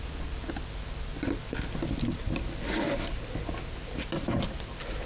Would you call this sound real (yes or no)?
yes